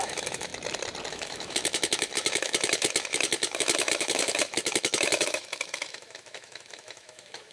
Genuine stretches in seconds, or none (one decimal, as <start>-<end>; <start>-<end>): 0.5-1.1